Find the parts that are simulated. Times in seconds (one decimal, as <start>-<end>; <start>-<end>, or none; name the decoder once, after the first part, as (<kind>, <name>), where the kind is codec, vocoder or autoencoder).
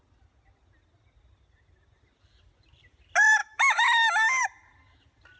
3.4-4.4 (autoencoder, DAC-VAE)